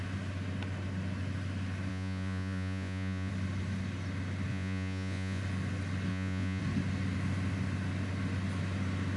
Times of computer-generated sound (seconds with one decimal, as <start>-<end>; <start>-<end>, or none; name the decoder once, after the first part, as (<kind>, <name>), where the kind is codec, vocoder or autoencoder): 1.9-3.3 (vocoder, Vocos); 4.5-5.4; 6.1-6.6